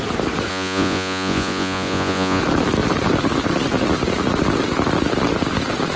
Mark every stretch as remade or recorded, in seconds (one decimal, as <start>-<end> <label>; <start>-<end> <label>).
0.0-0.5 recorded; 0.5-2.4 remade; 2.4-6.0 recorded